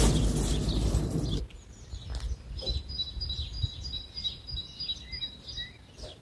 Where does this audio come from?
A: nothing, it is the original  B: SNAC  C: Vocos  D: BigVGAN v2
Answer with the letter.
A